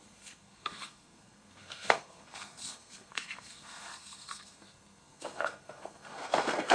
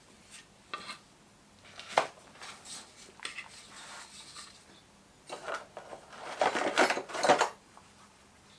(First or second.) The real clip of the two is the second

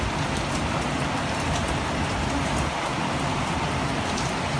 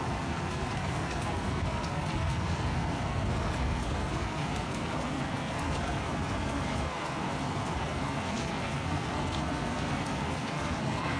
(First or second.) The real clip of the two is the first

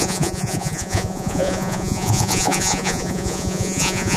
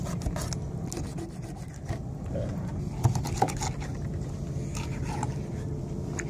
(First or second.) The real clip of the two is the second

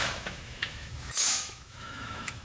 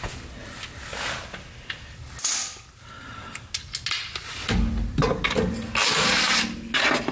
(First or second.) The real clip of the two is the second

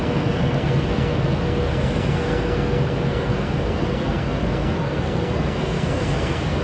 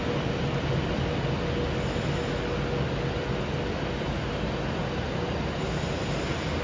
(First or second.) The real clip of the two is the second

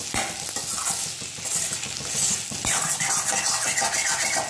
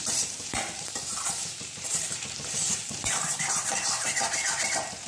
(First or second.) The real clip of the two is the first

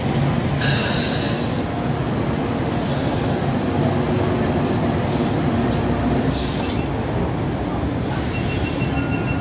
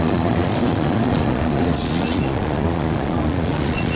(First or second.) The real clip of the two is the first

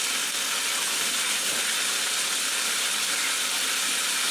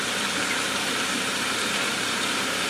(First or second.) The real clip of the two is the first